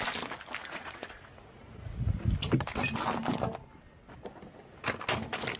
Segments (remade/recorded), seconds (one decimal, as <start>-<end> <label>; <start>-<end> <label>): 0.0-0.6 recorded; 0.6-2.2 remade; 2.2-5.6 recorded